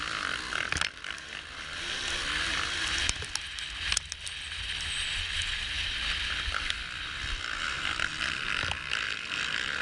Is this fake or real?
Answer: real